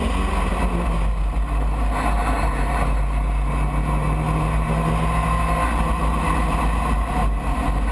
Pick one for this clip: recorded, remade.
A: recorded